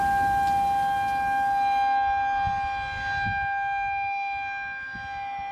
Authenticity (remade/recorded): recorded